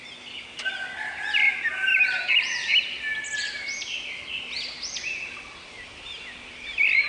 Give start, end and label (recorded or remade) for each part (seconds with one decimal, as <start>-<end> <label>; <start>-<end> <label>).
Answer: 0.0-7.1 recorded